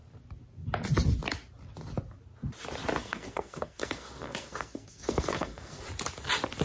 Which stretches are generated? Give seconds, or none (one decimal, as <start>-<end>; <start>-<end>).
3.0-5.8

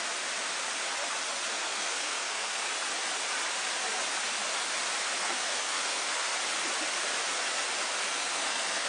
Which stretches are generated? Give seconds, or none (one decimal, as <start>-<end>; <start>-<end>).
1.5-2.7; 5.2-6.3; 8.1-8.9

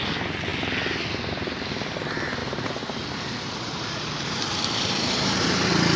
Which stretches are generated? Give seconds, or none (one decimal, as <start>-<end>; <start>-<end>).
2.4-6.0